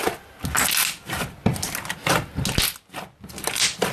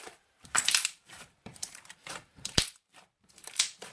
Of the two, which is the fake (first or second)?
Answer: second